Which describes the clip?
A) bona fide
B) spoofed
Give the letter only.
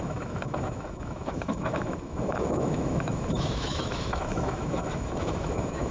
B